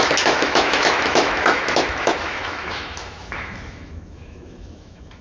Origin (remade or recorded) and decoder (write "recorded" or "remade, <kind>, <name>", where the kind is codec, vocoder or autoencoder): remade, autoencoder, DAC-VAE